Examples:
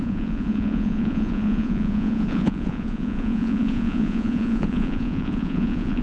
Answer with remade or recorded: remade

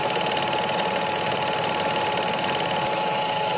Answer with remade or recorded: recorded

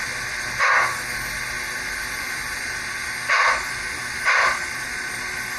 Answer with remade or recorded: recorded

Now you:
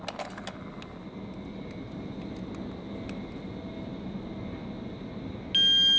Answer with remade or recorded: recorded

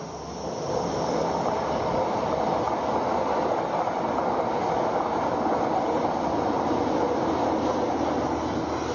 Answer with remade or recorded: recorded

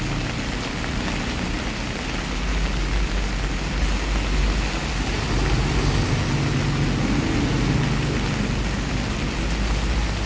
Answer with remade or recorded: recorded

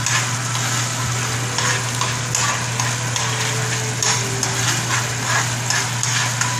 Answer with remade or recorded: recorded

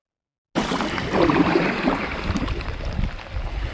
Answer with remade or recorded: recorded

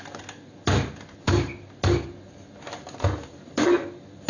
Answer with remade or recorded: recorded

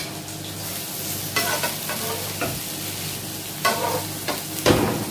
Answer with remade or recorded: recorded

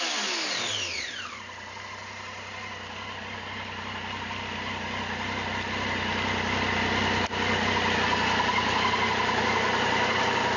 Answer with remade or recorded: recorded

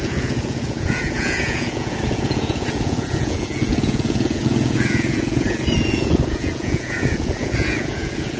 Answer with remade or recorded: remade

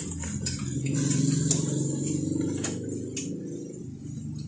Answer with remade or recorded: recorded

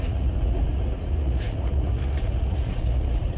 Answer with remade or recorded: remade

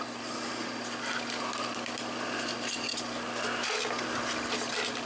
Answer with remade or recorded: recorded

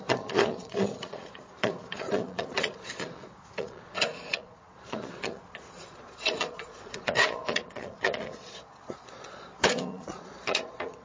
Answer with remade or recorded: remade